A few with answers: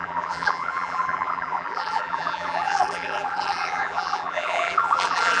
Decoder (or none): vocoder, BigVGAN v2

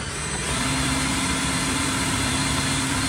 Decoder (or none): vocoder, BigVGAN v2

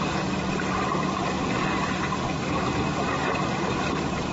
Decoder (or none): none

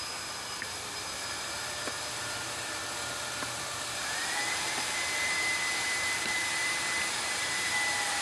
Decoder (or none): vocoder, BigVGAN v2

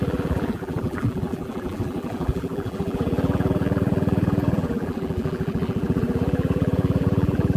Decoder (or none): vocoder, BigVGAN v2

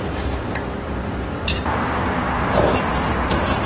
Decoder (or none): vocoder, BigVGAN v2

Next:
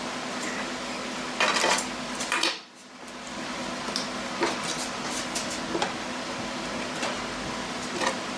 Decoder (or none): none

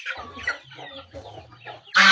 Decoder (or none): vocoder, BigVGAN v2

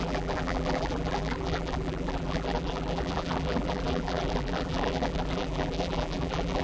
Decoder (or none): vocoder, BigVGAN v2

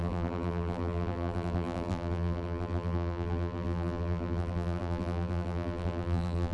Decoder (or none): vocoder, BigVGAN v2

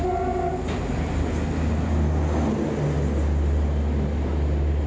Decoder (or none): none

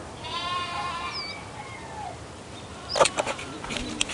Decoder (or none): none